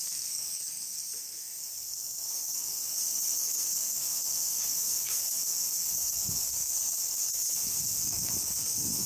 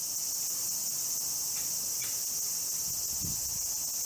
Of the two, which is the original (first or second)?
second